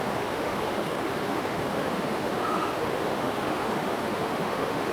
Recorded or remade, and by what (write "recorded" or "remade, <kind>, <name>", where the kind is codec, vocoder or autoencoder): remade, autoencoder, DAC-VAE